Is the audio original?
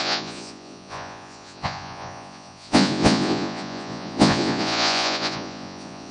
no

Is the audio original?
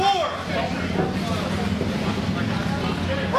yes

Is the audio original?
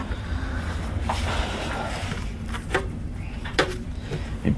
yes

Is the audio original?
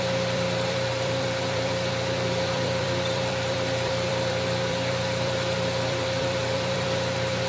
no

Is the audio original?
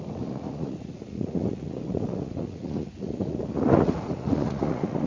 no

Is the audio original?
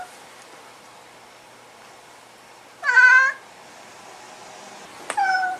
yes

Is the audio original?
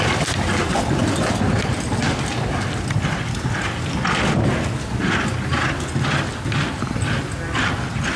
yes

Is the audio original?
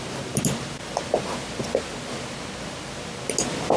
yes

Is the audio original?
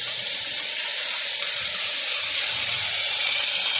no